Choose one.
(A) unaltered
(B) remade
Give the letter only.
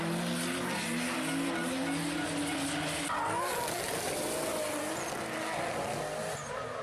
A